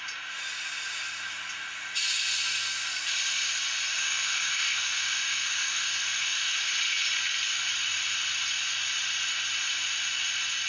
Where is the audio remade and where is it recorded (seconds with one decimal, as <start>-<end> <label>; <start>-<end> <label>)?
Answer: 0.0-4.0 recorded; 4.0-6.7 remade; 6.7-10.7 recorded